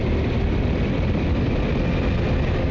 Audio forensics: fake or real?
real